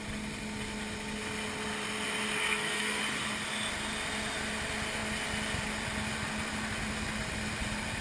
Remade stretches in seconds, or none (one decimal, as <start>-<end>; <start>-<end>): 2.4-3.0